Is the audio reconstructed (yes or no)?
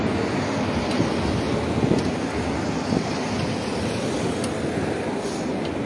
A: no